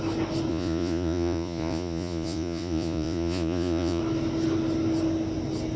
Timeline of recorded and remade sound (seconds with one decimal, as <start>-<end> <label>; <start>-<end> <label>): 0.0-0.5 recorded; 0.5-4.0 remade; 4.0-5.8 recorded